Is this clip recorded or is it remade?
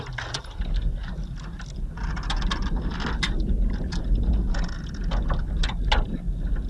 recorded